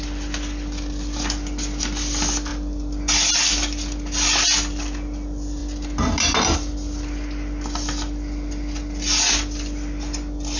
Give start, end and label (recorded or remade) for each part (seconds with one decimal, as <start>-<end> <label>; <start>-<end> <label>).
0.0-10.6 recorded